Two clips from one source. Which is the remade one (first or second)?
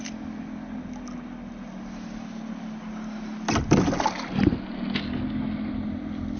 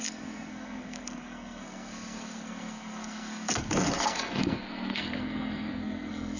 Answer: second